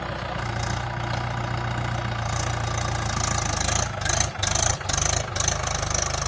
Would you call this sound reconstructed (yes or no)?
no